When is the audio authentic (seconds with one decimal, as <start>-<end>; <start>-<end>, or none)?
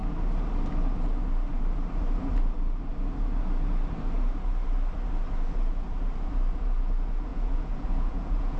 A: 0.0-7.3